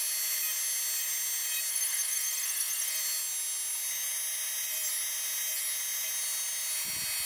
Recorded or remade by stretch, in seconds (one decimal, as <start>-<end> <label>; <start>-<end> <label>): 0.0-1.7 recorded; 1.7-3.0 remade; 3.0-7.3 recorded

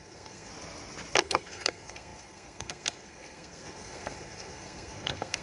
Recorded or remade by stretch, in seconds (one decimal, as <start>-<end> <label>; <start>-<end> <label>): 0.0-0.5 remade; 0.5-1.2 recorded; 1.2-5.4 remade

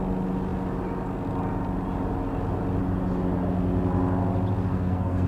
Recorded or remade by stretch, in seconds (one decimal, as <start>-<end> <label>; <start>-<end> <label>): 0.0-4.7 recorded; 4.7-5.3 remade

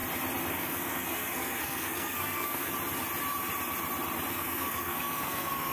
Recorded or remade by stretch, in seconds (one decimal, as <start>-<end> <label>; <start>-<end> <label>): 0.0-0.5 recorded; 0.5-2.7 remade; 2.7-4.3 recorded; 4.3-5.7 remade

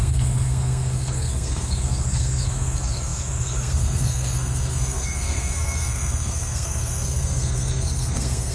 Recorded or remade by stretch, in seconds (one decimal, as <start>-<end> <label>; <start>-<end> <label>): 0.0-8.5 remade

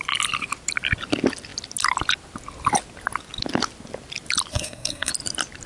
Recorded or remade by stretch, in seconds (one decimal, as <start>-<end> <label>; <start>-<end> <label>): 0.0-4.5 recorded; 4.5-5.1 remade; 5.1-5.7 recorded